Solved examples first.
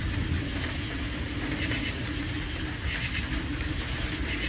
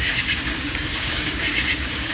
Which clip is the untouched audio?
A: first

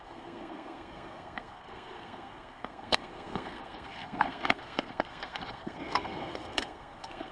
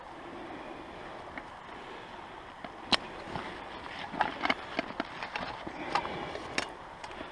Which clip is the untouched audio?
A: second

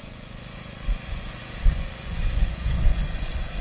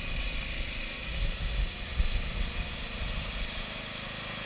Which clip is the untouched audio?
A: second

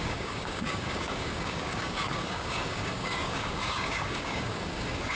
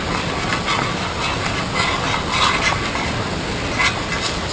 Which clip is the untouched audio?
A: second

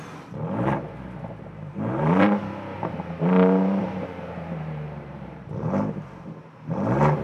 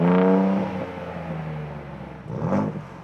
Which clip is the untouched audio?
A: second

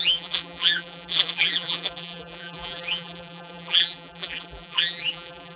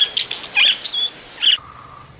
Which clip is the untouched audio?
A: second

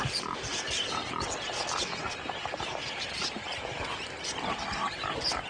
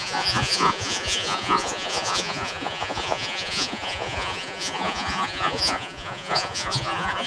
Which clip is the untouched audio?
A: first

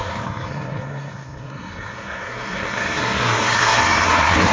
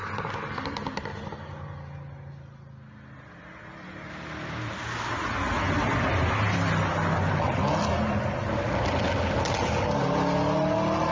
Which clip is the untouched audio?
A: second